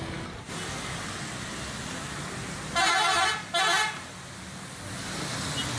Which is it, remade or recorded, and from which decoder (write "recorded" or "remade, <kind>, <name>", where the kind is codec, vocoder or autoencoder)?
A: recorded